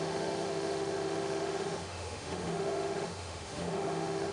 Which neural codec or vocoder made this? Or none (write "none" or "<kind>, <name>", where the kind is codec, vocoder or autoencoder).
autoencoder, DAC-VAE